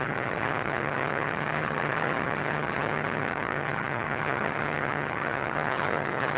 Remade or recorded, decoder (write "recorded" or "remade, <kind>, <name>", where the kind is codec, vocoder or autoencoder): remade, vocoder, HiFi-GAN